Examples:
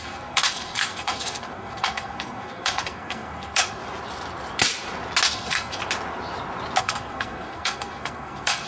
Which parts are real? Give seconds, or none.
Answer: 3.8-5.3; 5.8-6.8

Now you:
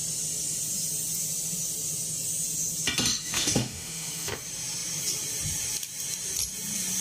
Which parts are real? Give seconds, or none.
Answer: 0.0-3.2; 4.3-7.0